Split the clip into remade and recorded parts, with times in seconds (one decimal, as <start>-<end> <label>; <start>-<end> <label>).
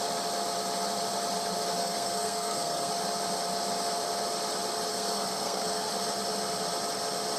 0.0-1.8 recorded; 1.8-2.9 remade; 2.9-4.9 recorded; 4.9-5.9 remade; 5.9-7.4 recorded